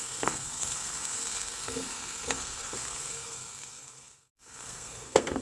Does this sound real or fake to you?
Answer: fake